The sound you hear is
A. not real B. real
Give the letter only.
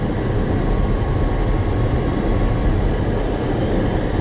B